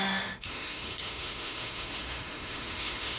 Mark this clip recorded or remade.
remade